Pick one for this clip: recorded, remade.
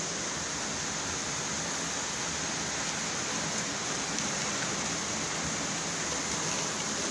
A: recorded